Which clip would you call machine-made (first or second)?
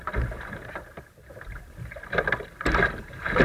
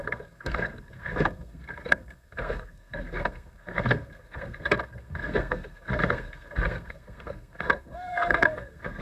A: second